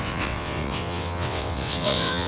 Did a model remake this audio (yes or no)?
yes